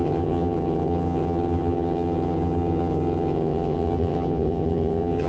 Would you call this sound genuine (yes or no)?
no